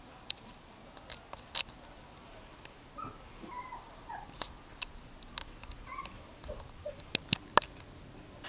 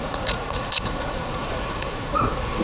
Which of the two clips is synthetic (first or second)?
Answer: second